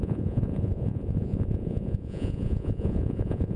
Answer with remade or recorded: remade